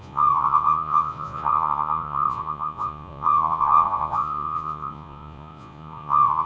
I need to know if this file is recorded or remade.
remade